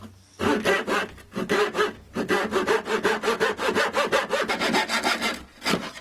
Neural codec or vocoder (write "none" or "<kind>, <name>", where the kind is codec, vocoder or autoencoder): none